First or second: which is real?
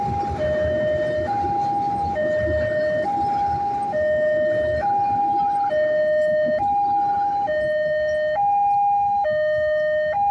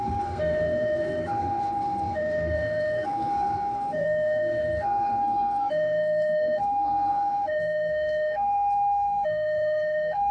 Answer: first